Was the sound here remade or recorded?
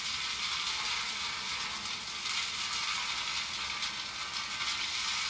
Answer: recorded